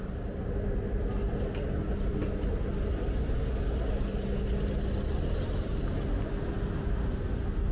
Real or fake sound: real